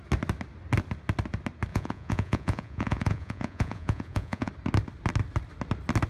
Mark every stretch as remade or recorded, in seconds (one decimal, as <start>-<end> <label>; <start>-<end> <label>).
0.0-1.7 recorded; 1.7-4.5 remade; 4.5-6.1 recorded